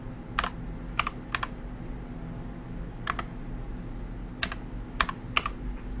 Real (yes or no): yes